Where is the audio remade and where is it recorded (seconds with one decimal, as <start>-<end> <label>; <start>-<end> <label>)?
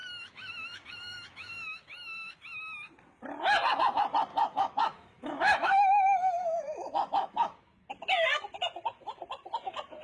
0.0-2.3 remade; 2.3-4.3 recorded; 4.3-7.9 remade; 7.9-10.0 recorded